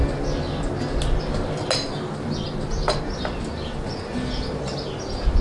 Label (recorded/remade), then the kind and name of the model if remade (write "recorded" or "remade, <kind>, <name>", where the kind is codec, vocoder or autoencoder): recorded